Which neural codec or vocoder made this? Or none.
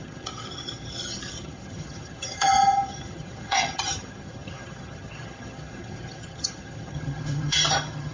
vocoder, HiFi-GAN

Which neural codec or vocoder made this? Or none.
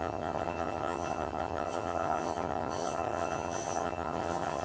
vocoder, HiFi-GAN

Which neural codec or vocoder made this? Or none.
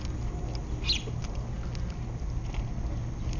none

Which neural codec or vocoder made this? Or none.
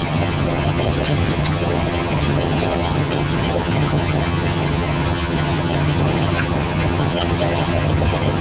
vocoder, HiFi-GAN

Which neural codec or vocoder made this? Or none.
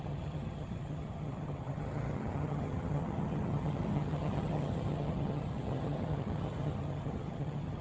vocoder, HiFi-GAN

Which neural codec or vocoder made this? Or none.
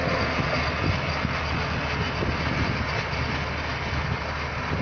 none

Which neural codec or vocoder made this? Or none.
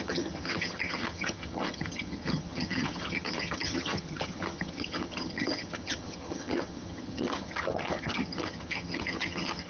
vocoder, HiFi-GAN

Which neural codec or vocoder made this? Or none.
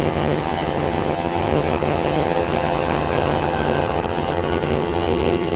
vocoder, HiFi-GAN